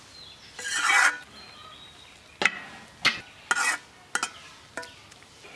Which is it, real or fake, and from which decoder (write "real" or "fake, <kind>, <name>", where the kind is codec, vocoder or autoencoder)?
real